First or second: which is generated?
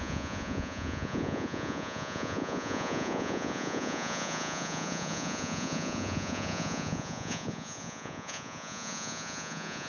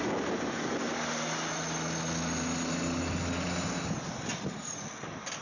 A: first